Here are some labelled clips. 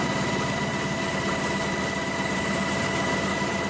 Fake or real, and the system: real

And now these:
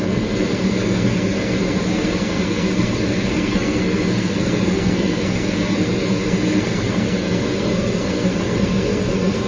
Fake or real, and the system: fake, codec, SNAC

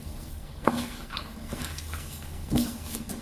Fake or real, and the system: fake, codec, SNAC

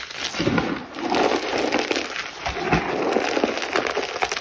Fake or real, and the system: real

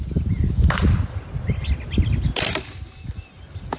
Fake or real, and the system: real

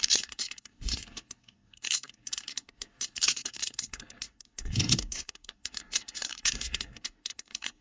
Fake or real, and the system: fake, codec, SNAC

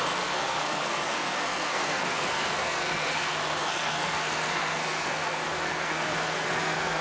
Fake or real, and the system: fake, codec, SNAC